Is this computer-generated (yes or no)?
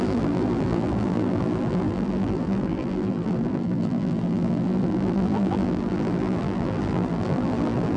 yes